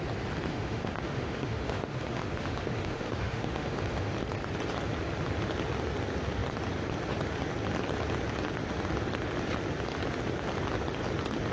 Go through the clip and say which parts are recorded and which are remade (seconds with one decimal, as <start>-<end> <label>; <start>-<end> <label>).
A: 0.0-0.5 recorded; 0.5-3.9 remade; 3.9-11.5 recorded